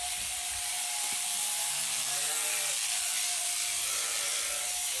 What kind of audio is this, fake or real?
real